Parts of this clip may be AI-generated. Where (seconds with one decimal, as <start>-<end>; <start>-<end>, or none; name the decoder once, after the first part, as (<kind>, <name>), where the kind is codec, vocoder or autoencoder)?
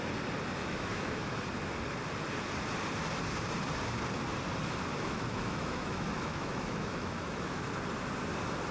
0.6-1.2 (autoencoder, DAC-VAE); 4.9-7.7